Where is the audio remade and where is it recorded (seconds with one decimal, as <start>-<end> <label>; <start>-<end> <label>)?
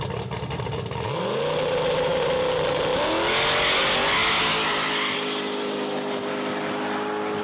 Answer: 0.0-7.4 recorded